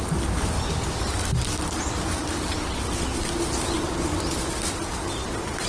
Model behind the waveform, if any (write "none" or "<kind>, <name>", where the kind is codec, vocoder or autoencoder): none